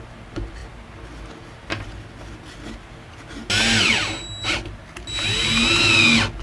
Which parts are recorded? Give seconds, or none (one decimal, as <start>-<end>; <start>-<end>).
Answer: 0.0-6.4